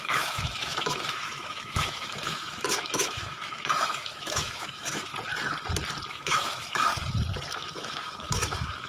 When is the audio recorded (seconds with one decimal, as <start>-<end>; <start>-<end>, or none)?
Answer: 5.1-6.1; 6.9-7.5